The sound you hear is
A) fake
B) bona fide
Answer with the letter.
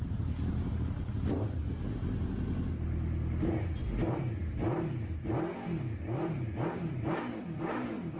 B